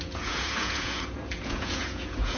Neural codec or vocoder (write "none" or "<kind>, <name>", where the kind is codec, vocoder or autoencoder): vocoder, Vocos